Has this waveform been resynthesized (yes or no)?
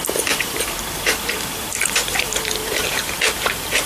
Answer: yes